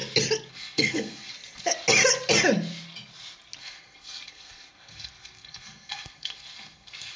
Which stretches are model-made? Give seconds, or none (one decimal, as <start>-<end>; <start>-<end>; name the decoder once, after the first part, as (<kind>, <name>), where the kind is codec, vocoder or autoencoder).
0.5-1.3 (codec, SNAC); 3.6-7.2